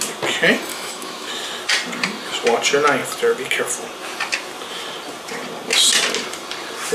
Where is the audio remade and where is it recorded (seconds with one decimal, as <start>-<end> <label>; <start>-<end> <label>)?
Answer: 0.0-0.7 recorded; 0.7-1.3 remade; 1.3-6.9 recorded